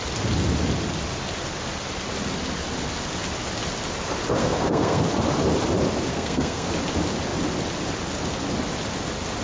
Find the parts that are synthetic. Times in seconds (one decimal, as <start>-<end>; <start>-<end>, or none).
4.4-5.0; 6.1-6.7